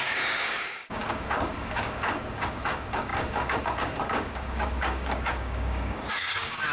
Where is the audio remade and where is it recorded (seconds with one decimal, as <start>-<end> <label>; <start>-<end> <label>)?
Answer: 0.0-6.7 remade